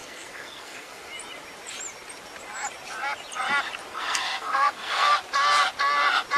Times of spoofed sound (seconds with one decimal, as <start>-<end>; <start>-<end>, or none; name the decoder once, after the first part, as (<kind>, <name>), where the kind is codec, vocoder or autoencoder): 0.0-1.1 (codec, SNAC); 3.9-5.1